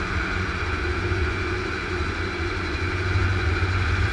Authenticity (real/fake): fake